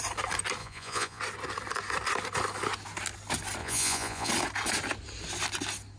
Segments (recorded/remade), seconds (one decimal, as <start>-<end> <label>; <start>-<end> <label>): 0.0-0.6 recorded; 0.6-1.2 remade; 1.2-3.6 recorded; 3.6-4.3 remade; 4.3-6.0 recorded

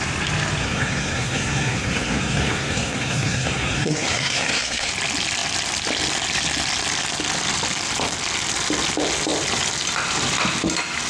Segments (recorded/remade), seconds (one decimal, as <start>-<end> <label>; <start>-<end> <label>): 0.0-0.6 recorded; 0.6-4.9 remade; 4.9-11.1 recorded

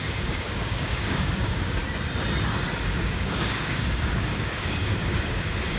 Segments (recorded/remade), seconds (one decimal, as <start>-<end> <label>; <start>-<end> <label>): 0.0-1.8 remade; 1.8-2.8 recorded; 2.8-5.8 remade